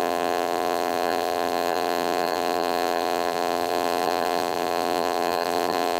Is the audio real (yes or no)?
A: no